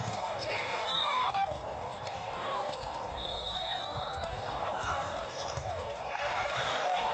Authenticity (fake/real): fake